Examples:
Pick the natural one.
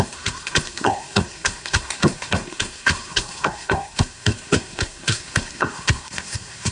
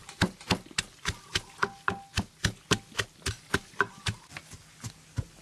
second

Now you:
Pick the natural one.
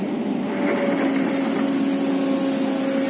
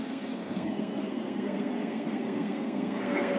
first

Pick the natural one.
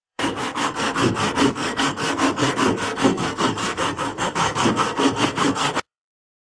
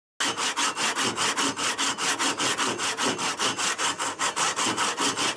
second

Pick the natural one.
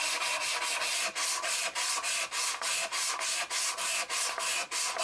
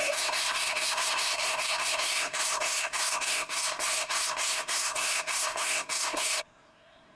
first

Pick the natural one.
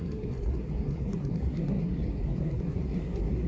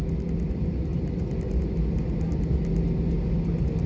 second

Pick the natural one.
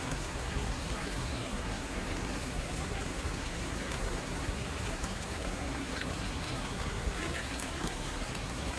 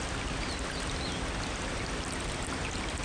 second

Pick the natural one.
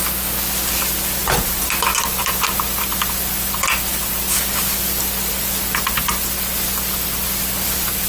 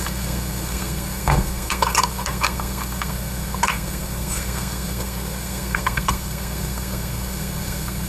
first